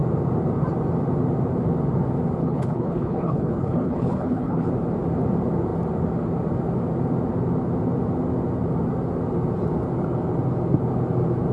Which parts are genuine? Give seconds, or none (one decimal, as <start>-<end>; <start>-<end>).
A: 0.0-2.4; 4.7-11.5